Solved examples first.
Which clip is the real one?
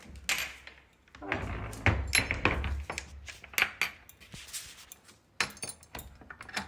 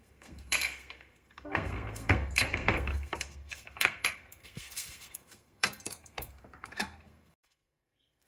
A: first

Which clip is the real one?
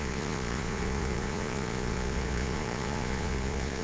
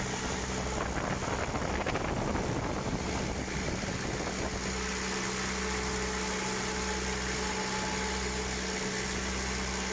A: second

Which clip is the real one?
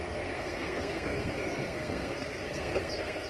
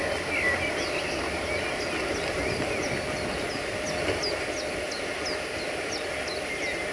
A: second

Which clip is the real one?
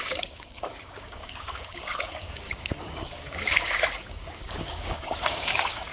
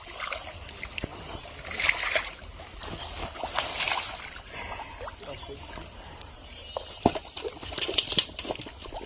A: second